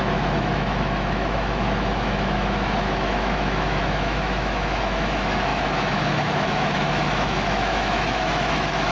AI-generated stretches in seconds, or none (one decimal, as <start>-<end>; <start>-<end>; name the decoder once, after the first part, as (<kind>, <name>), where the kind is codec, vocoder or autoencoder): 0.0-8.9 (autoencoder, DAC-VAE)